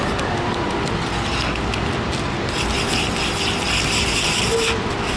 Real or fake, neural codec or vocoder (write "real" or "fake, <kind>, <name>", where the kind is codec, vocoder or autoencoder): real